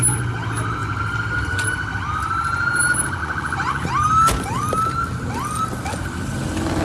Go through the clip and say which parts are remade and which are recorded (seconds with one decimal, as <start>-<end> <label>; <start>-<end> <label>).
0.0-3.2 recorded; 3.2-3.9 remade; 3.9-6.8 recorded